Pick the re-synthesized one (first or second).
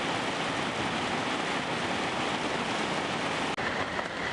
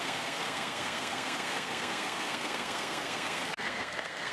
second